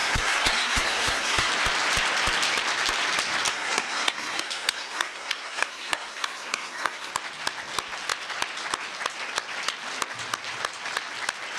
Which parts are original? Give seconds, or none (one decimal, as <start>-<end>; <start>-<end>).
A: 1.5-3.5; 7.1-11.6